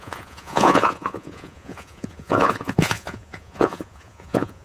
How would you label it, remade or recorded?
remade